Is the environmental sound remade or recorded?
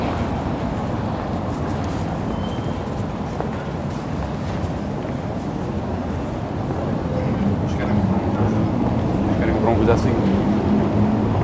recorded